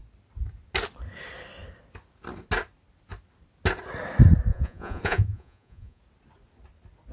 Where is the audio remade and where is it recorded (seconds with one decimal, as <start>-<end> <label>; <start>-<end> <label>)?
0.0-4.5 recorded; 4.5-6.0 remade; 6.0-7.1 recorded